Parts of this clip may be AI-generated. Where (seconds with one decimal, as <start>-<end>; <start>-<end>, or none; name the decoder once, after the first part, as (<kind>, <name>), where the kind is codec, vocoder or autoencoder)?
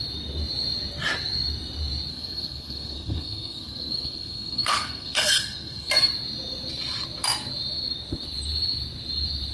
2.1-5.9 (codec, SNAC)